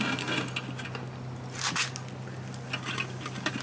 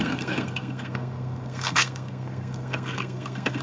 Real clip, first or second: first